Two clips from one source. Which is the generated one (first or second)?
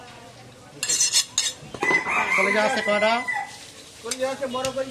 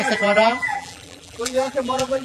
second